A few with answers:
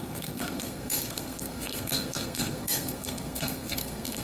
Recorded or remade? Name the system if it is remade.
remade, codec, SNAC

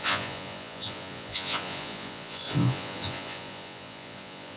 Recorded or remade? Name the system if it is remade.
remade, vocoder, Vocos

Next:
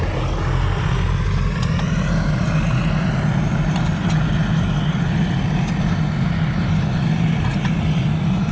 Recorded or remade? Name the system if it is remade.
recorded